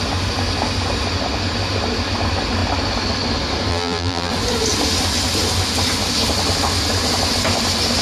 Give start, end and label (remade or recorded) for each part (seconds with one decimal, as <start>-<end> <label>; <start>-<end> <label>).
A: 0.0-3.7 recorded; 3.7-4.3 remade; 4.3-8.0 recorded